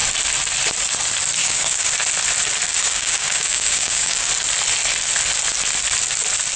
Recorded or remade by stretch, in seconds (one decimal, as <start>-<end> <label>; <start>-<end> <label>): 0.0-1.4 recorded; 1.4-1.9 remade; 1.9-2.7 recorded; 2.7-4.3 remade; 4.3-6.6 recorded